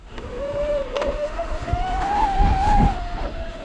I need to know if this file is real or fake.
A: fake